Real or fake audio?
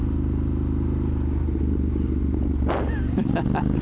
real